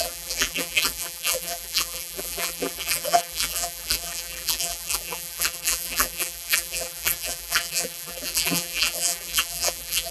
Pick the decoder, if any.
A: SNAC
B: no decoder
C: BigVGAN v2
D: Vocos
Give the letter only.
C